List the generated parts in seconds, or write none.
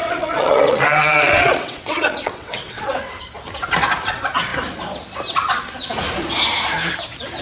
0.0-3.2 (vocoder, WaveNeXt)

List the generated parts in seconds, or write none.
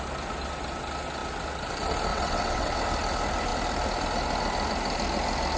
2.1-2.8 (vocoder, WaveNeXt)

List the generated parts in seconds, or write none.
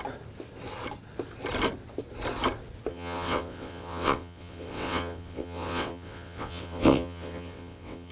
2.9-8.1 (vocoder, WaveNeXt)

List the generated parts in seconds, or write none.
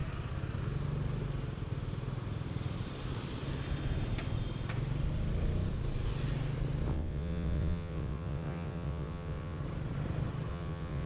6.9-9.6 (vocoder, WaveNeXt); 10.5-11.1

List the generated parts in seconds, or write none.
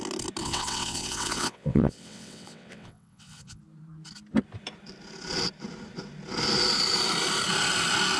0.4-3.6 (vocoder, WaveNeXt)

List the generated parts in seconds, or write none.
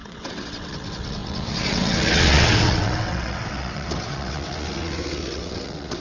0.0-6.0 (vocoder, WaveNeXt)